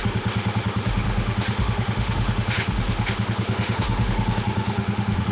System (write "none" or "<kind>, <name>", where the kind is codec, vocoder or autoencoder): autoencoder, DAC-VAE